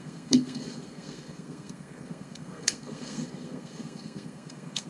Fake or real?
fake